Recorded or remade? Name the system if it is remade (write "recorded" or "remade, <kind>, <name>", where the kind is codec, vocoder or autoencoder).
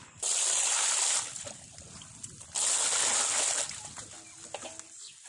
recorded